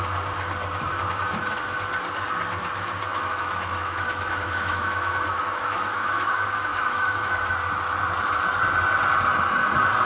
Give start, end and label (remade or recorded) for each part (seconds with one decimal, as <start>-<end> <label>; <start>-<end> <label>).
0.0-3.1 recorded; 3.1-7.5 remade; 7.5-10.0 recorded